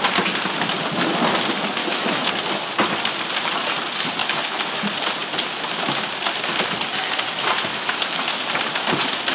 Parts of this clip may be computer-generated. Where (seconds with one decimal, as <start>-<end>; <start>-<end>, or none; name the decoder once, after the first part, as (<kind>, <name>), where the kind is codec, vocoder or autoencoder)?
1.8-2.3 (autoencoder, DAC-VAE); 4.2-4.8; 7.7-8.3